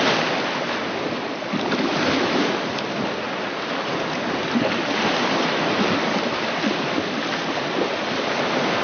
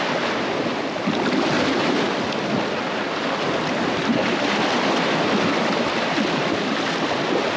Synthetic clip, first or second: second